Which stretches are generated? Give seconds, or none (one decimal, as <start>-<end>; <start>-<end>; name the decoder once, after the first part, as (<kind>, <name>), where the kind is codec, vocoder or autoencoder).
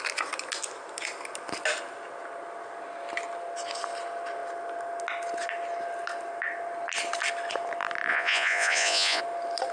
8.1-9.2 (vocoder, Vocos)